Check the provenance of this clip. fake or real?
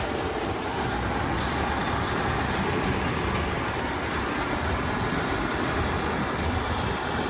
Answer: real